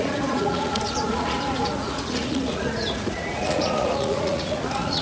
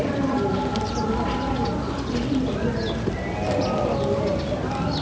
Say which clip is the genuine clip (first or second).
second